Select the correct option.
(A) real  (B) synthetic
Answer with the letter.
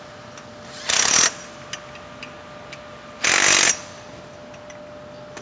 A